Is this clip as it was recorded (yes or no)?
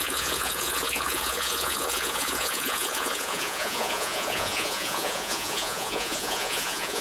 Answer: no